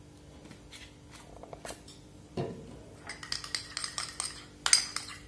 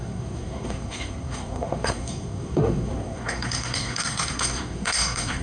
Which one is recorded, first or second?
first